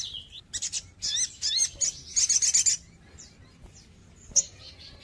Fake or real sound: real